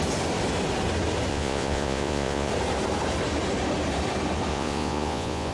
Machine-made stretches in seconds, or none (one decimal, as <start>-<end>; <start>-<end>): 1.3-2.5; 4.5-5.5